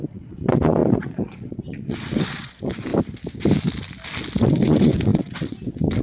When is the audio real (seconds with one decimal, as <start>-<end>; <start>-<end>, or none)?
2.9-4.4